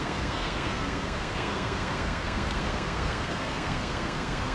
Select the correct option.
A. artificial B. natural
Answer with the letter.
A